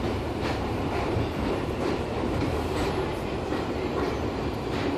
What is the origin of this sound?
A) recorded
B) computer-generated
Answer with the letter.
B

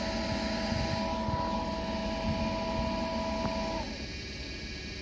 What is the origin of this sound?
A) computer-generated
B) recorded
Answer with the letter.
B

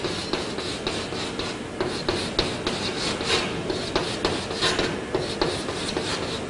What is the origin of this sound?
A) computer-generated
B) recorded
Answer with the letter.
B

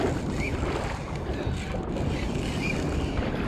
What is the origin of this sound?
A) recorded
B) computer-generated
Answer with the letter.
A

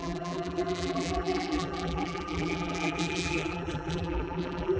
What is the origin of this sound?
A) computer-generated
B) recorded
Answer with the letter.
A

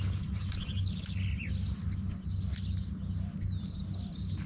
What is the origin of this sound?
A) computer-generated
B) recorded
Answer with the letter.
B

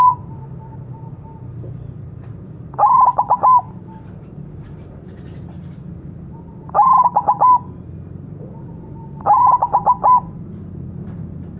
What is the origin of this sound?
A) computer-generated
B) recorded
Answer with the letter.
A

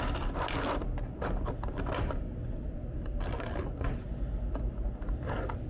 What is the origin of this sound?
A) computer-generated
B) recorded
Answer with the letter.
B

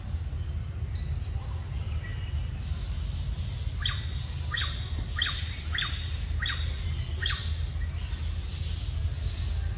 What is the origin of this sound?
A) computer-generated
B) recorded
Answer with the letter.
B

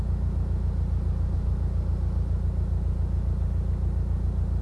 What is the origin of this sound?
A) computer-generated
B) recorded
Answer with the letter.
B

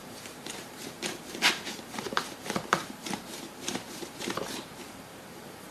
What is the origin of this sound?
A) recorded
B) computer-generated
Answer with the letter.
B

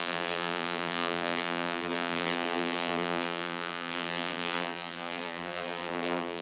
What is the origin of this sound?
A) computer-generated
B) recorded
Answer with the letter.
A